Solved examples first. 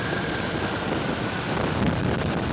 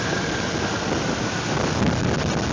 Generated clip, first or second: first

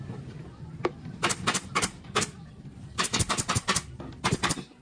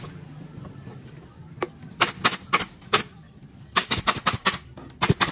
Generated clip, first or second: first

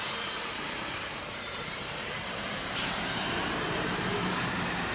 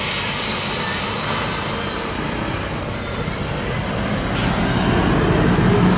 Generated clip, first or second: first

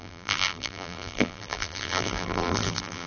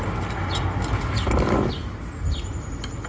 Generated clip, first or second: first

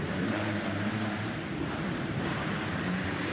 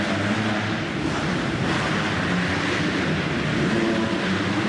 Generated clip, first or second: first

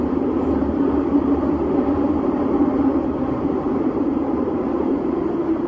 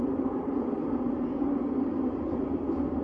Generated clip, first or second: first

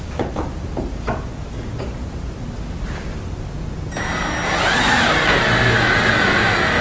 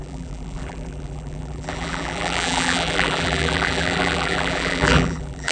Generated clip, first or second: second